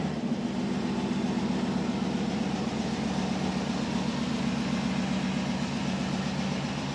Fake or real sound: real